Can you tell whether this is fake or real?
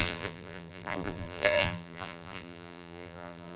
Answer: fake